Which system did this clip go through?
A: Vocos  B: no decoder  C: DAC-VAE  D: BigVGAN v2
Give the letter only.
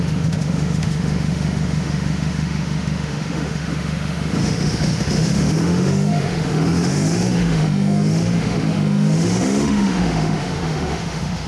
C